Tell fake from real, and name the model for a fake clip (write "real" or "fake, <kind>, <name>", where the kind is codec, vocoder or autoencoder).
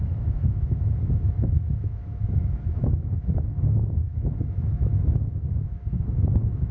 fake, autoencoder, DAC-VAE